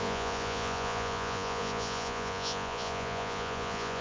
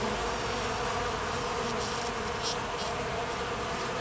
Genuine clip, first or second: second